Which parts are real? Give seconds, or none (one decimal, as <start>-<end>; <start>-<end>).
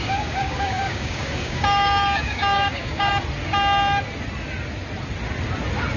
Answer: 3.1-6.0